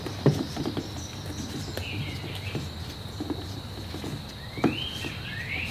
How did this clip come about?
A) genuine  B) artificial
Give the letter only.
A